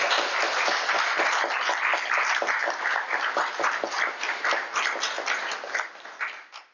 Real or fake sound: real